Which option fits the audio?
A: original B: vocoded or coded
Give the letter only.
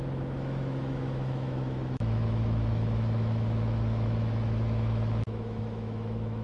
B